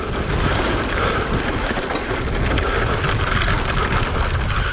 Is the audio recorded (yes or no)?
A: yes